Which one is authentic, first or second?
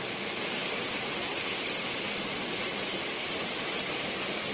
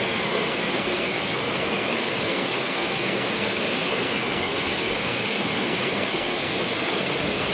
first